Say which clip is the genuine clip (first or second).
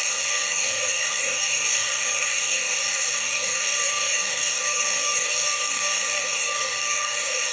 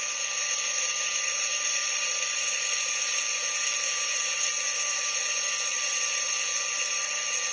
second